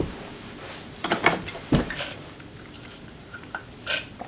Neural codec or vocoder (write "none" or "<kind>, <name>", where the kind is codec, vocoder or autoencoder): vocoder, BigVGAN v2